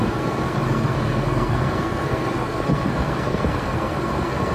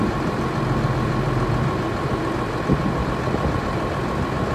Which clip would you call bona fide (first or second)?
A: second